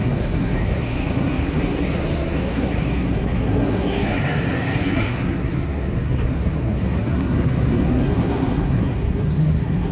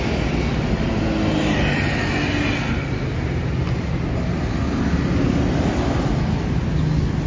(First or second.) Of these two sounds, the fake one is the first